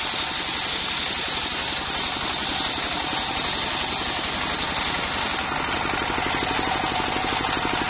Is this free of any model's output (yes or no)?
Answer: yes